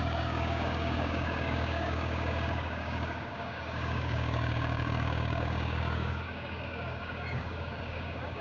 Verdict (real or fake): fake